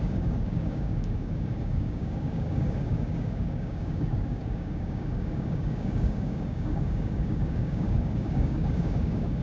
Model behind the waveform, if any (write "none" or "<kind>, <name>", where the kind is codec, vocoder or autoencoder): codec, DAC